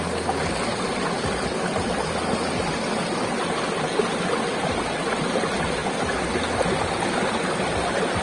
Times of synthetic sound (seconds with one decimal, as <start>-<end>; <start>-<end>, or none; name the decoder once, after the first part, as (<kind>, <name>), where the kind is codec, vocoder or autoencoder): none